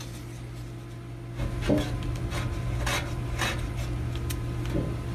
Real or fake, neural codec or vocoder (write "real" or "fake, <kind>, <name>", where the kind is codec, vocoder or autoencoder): real